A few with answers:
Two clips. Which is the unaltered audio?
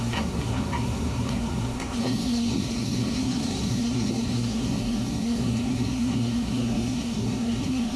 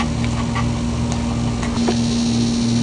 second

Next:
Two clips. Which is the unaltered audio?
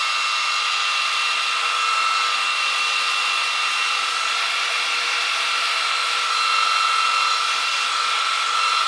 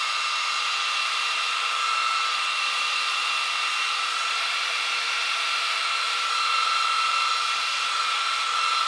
first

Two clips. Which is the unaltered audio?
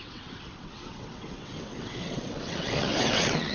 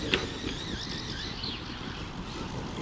second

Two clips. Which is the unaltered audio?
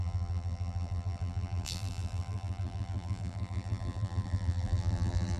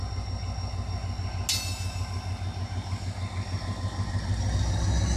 second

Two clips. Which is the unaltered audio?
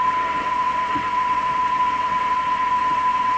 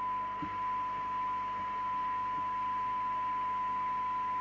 second